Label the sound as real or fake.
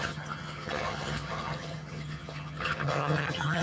fake